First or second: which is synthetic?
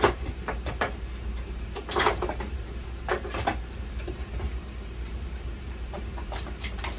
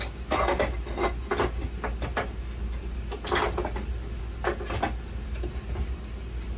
first